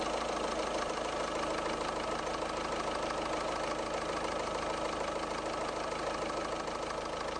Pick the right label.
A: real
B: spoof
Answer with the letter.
A